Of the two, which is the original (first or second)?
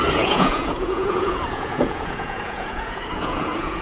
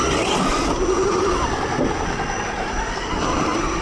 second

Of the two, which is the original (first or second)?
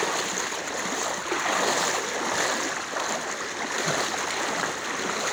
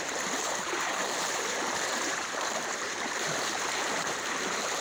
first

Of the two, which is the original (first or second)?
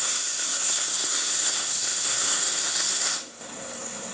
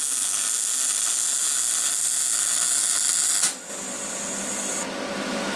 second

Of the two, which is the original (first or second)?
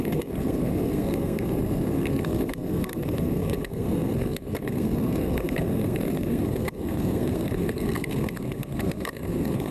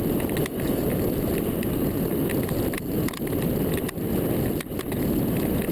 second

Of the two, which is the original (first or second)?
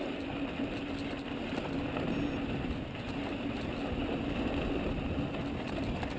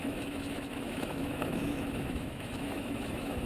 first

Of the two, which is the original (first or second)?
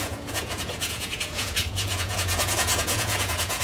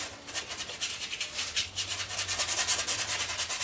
second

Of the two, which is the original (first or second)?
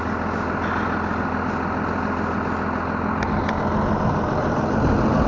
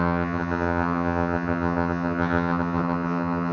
first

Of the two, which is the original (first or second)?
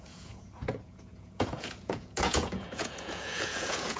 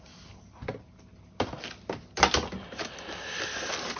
second